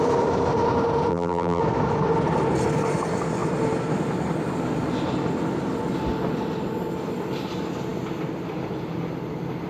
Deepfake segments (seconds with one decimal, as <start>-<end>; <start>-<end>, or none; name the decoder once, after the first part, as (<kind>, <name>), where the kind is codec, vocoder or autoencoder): 1.1-1.6 (vocoder, BigVGAN v2)